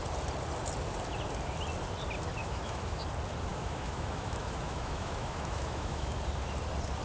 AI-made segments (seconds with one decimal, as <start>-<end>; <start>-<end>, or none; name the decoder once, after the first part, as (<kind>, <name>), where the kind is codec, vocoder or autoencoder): 2.4-3.0 (autoencoder, DAC-VAE); 3.5-6.1